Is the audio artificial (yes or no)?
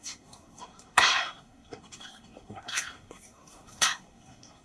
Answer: yes